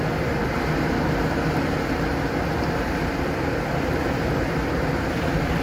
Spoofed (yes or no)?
no